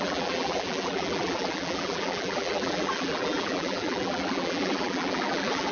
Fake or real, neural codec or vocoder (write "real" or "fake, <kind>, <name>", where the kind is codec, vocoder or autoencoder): fake, vocoder, BigVGAN v2